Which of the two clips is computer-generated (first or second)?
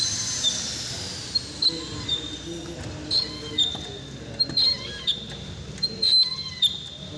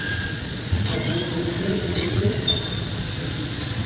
second